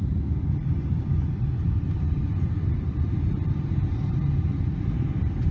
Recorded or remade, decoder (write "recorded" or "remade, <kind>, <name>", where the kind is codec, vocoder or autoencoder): remade, vocoder, BigVGAN v2